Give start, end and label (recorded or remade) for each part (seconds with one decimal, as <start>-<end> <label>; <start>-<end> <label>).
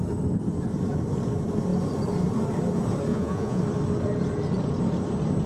0.0-3.1 recorded; 3.1-3.6 remade; 3.6-5.5 recorded